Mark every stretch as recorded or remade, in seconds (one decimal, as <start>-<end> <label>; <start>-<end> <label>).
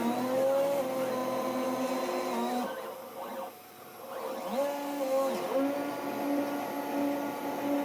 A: 0.0-7.8 recorded